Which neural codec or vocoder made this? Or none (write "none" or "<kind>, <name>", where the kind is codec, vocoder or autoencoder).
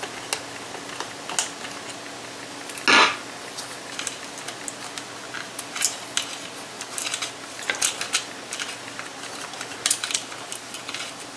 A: none